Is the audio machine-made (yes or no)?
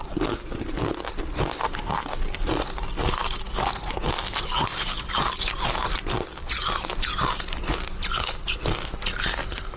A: no